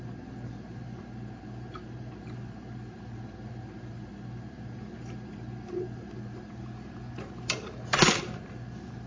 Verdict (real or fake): fake